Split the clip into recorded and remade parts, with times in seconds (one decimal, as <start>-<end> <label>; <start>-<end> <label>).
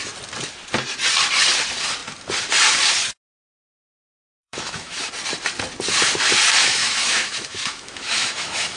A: 0.0-4.3 recorded; 4.3-5.1 remade; 5.1-6.6 recorded; 6.6-8.8 remade